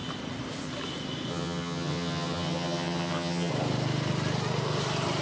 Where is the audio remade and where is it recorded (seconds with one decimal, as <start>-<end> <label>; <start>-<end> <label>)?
0.0-1.3 recorded; 1.3-3.5 remade; 3.5-5.2 recorded